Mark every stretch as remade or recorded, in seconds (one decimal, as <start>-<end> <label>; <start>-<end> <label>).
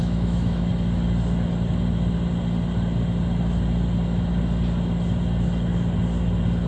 0.0-0.7 remade; 0.7-6.7 recorded